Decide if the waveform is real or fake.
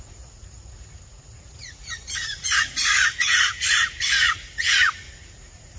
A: fake